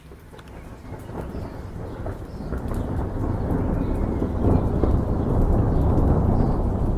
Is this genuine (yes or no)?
yes